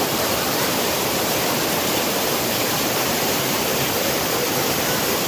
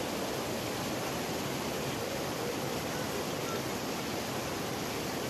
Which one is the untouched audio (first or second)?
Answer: second